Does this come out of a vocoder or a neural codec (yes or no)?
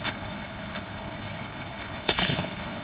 yes